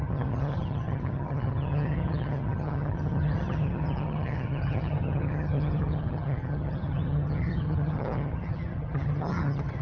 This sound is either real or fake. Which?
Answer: fake